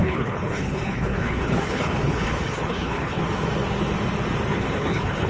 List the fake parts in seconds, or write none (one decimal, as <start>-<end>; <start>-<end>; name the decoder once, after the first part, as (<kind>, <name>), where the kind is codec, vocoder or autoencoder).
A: 0.0-3.2 (codec, HILCodec); 4.5-5.3